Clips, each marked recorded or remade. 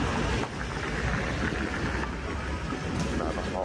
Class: recorded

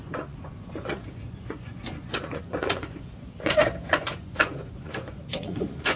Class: remade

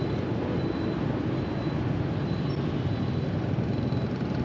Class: recorded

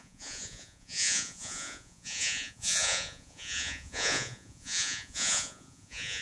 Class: remade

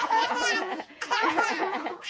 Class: remade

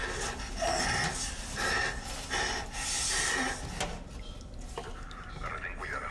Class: recorded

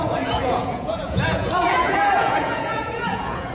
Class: remade